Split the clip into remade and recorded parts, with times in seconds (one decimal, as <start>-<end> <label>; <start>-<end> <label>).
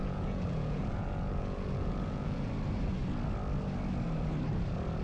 0.0-2.5 remade; 2.5-5.0 recorded